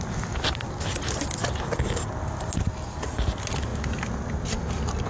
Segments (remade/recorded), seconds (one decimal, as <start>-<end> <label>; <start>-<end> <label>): 0.0-5.1 recorded